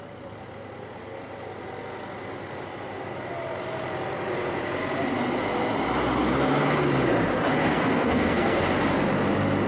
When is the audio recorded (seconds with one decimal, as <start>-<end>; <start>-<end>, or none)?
0.0-7.7; 8.6-9.7